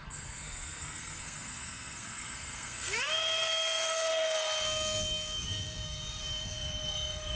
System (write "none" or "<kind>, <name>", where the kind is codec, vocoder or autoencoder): codec, SNAC